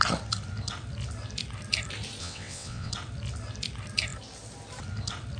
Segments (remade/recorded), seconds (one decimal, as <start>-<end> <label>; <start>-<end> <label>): 0.0-2.2 recorded; 2.2-2.9 remade; 2.9-5.4 recorded